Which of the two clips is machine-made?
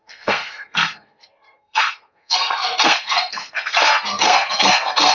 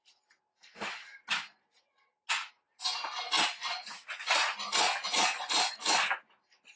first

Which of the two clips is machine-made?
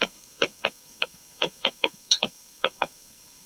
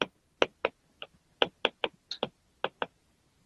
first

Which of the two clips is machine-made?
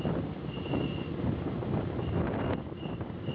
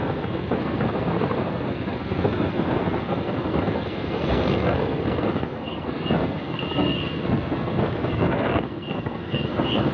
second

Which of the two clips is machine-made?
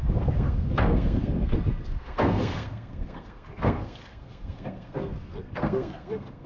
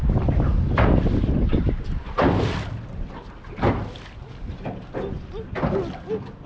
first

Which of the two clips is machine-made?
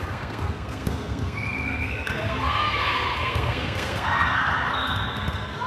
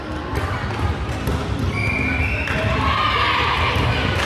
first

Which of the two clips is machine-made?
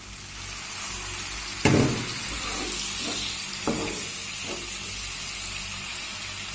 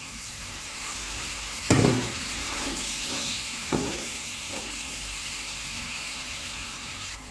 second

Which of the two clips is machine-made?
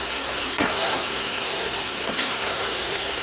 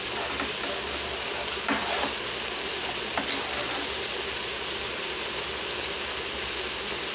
first